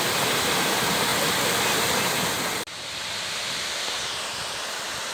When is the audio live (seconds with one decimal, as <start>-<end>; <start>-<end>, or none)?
0.0-5.1